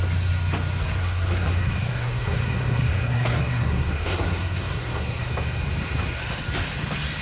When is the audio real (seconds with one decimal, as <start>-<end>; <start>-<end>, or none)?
0.0-1.0; 5.3-7.2

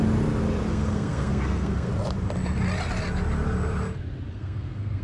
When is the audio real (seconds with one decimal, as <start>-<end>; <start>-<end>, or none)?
0.0-0.7; 1.9-4.3

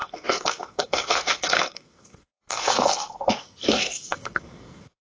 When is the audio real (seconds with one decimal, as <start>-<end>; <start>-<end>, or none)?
none